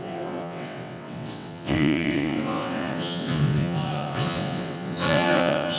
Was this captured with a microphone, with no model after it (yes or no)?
no